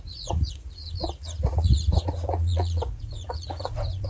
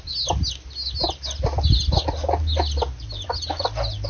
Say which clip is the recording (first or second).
second